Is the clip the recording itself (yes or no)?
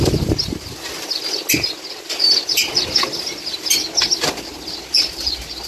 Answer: yes